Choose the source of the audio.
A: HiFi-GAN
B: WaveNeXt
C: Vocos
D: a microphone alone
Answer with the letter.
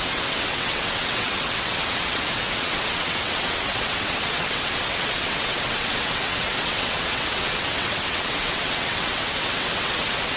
B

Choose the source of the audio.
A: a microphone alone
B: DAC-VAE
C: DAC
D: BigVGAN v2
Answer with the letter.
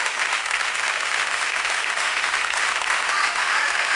B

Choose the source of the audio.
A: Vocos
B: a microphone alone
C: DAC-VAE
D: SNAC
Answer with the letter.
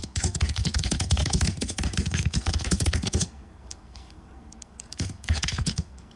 D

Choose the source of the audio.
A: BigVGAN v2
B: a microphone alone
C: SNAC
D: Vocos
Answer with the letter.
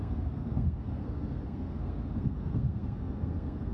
C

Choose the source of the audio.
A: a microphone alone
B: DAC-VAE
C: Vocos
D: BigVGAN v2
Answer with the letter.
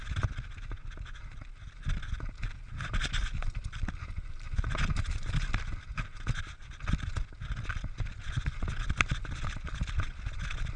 A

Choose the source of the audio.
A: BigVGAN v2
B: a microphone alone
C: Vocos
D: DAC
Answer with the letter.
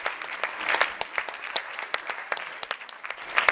A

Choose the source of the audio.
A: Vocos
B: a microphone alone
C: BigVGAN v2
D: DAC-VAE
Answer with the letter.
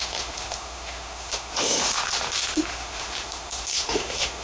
D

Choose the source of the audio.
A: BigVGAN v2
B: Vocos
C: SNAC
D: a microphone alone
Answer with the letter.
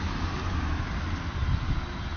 D